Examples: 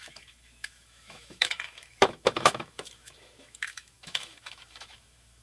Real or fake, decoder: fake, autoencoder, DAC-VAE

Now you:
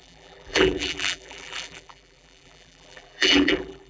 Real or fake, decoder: fake, vocoder, BigVGAN v2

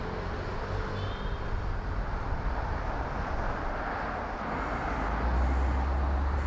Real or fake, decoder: real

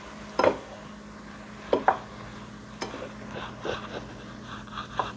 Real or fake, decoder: real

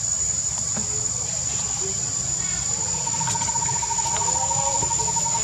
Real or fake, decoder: real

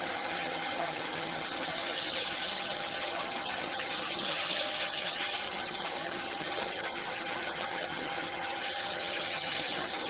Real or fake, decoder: fake, vocoder, HiFi-GAN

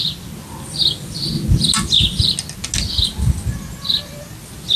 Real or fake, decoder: real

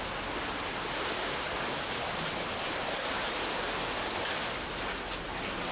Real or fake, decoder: real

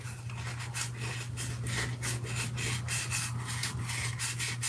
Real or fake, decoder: real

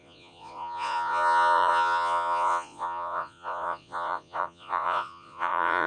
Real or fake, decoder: fake, vocoder, Vocos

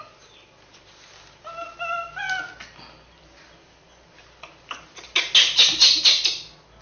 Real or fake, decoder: real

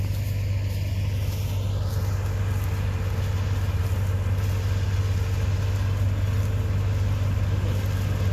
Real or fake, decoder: real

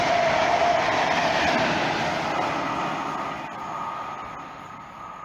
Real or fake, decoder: real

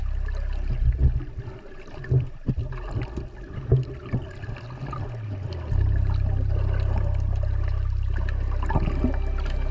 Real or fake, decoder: real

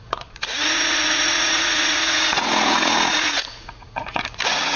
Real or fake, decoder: fake, vocoder, Vocos